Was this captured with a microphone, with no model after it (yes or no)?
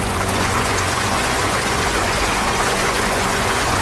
no